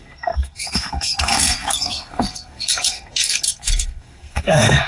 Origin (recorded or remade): remade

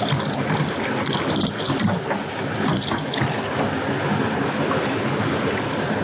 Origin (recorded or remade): recorded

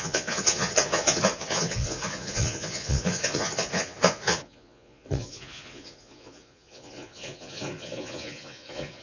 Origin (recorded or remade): remade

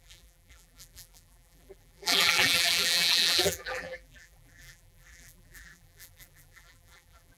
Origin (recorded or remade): remade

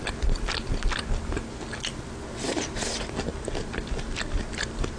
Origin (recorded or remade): recorded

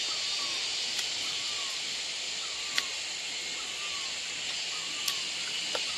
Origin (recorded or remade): recorded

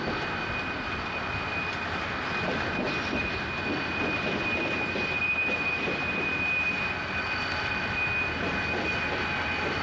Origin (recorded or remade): recorded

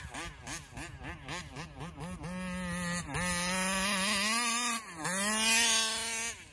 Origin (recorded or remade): recorded